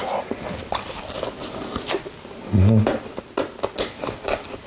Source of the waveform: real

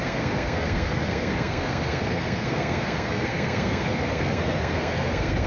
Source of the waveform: fake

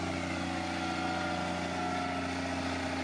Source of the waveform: real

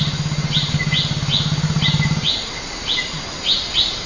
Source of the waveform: real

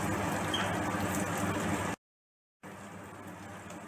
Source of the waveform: real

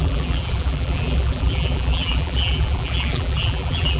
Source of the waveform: fake